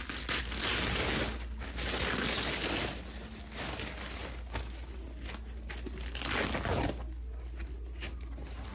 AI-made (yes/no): no